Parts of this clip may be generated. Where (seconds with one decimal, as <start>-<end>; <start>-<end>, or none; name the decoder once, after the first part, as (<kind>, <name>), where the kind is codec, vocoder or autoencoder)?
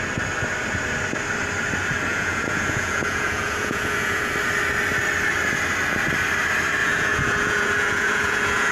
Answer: 2.1-4.2 (vocoder, Vocos); 6.8-8.7